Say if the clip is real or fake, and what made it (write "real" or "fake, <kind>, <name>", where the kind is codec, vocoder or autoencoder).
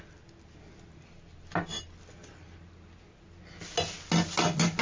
real